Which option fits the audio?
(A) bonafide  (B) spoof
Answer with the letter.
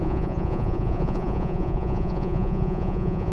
B